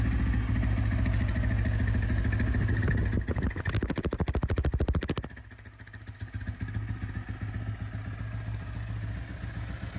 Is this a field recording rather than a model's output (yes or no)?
yes